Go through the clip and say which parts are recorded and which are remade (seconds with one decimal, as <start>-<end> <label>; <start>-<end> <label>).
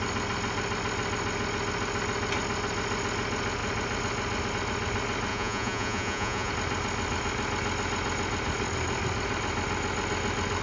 0.0-5.3 recorded; 5.3-6.5 remade; 6.5-10.6 recorded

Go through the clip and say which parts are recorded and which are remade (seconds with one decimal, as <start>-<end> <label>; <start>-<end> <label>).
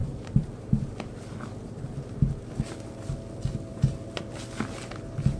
0.0-0.9 remade; 0.9-3.7 recorded; 3.7-4.2 remade; 4.2-5.4 recorded